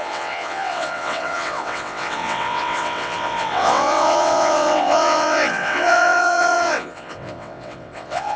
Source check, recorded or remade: remade